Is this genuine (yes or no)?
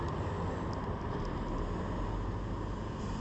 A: yes